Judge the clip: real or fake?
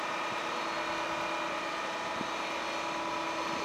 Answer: real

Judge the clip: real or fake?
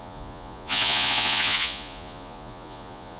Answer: fake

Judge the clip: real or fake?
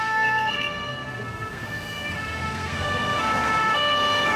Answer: fake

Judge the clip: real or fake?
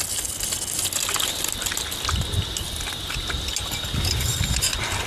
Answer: real